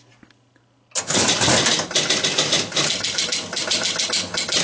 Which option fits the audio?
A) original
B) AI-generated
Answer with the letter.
A